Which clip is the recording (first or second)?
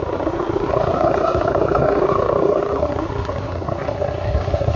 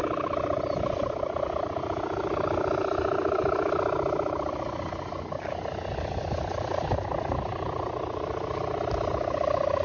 second